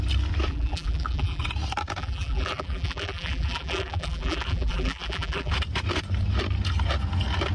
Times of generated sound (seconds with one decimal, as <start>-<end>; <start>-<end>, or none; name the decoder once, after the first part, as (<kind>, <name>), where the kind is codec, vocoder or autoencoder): 0.5-1.4 (vocoder, BigVGAN v2); 2.0-5.5

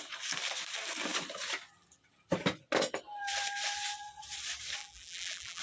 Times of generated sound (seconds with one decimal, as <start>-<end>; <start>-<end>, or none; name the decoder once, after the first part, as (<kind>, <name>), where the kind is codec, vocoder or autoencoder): 4.8-5.6 (vocoder, BigVGAN v2)

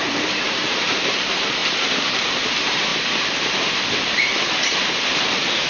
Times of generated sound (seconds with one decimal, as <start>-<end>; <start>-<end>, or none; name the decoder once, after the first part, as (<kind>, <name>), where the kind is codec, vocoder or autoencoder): 0.0-4.3 (vocoder, BigVGAN v2); 5.1-5.7

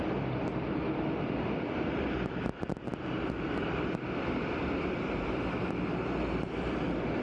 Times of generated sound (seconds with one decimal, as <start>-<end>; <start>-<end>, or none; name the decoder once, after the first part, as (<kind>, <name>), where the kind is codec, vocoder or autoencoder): 0.0-7.2 (vocoder, BigVGAN v2)

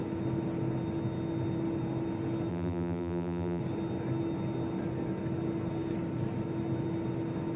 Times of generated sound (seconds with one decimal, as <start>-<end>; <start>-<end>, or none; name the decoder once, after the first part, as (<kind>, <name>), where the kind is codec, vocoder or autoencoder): 2.5-3.6 (vocoder, BigVGAN v2)

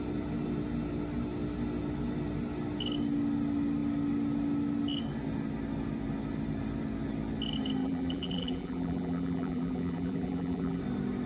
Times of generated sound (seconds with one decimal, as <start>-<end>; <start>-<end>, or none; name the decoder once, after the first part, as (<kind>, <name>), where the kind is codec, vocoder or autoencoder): 7.8-10.8 (vocoder, BigVGAN v2)